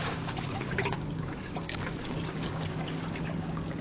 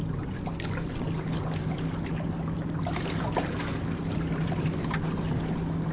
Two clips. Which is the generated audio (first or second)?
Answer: first